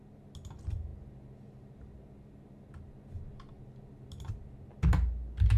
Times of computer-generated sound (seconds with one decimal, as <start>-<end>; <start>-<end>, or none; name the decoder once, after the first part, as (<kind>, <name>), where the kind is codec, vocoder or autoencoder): none